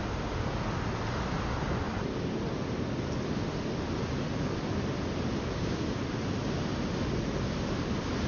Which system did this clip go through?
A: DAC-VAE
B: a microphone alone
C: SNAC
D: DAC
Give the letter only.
B